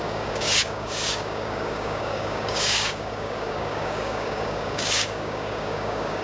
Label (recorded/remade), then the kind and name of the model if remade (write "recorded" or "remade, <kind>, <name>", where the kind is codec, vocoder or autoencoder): remade, codec, DAC